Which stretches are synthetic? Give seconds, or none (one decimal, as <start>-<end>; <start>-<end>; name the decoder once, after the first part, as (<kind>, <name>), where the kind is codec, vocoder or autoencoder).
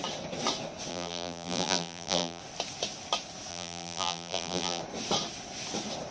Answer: 0.9-2.4 (vocoder, BigVGAN v2); 3.5-4.8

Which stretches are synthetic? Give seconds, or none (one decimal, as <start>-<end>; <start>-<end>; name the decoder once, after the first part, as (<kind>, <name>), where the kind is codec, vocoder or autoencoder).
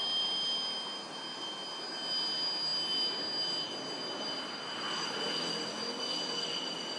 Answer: none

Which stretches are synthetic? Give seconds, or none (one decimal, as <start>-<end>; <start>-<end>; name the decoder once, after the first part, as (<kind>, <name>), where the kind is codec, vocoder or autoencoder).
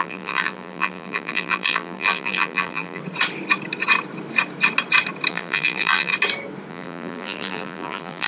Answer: 0.0-3.0 (vocoder, BigVGAN v2); 5.3-6.1; 6.7-8.3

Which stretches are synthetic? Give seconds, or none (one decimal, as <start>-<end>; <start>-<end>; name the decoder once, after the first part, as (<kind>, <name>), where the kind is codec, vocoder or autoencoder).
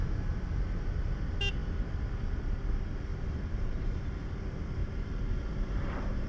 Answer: 3.1-4.3 (vocoder, BigVGAN v2); 4.8-6.3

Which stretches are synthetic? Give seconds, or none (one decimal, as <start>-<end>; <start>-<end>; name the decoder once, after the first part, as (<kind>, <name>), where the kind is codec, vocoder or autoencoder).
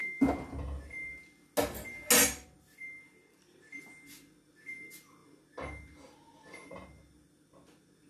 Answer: none